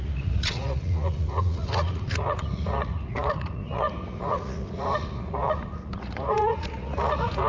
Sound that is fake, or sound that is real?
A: fake